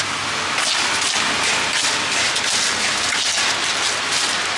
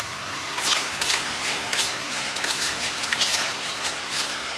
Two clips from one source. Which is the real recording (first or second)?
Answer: first